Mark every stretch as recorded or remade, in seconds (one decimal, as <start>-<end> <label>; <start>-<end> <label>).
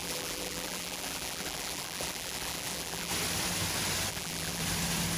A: 0.0-3.1 remade; 3.1-4.1 recorded; 4.1-4.6 remade; 4.6-5.2 recorded